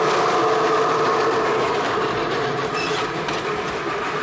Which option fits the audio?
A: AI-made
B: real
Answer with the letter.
B